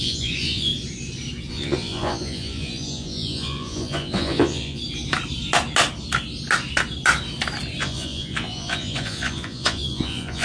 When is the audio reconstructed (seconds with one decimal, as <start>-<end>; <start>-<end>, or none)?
0.0-0.7; 1.5-4.8; 7.8-10.4

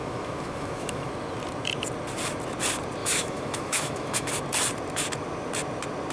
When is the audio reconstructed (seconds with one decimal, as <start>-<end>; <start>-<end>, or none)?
0.0-1.1; 3.0-4.3

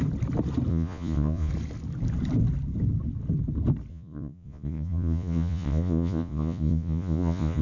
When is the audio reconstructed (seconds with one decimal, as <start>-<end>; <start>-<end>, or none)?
0.7-1.5; 3.9-7.6

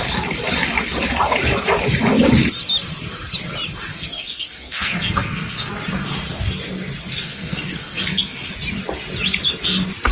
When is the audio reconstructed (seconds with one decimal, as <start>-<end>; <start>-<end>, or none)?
3.9-5.7; 7.1-8.5

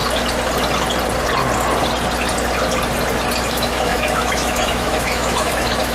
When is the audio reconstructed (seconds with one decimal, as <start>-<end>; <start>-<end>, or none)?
3.5-5.9

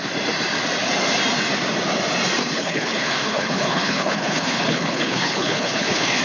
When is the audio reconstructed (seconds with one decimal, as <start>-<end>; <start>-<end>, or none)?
2.4-6.2

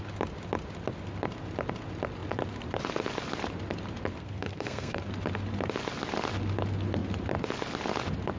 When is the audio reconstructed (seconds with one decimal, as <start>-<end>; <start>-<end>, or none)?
4.2-5.0

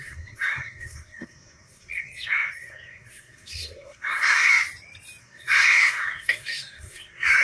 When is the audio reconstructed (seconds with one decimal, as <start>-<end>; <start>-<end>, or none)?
0.0-4.5; 5.2-7.4